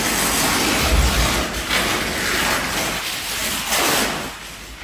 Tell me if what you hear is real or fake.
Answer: real